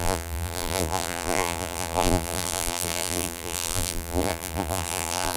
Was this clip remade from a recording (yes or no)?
yes